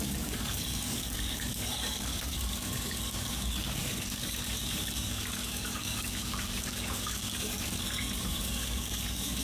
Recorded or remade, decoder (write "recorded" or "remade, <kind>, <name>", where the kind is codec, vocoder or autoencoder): remade, codec, DAC